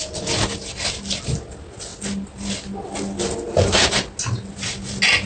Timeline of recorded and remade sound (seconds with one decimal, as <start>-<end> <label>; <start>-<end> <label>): 0.0-5.3 recorded